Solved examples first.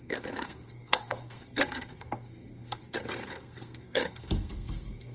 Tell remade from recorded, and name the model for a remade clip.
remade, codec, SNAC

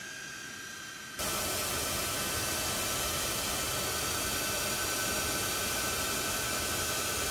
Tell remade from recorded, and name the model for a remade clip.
recorded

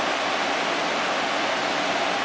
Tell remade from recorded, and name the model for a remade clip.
recorded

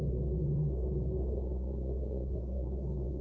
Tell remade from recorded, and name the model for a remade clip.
remade, codec, SNAC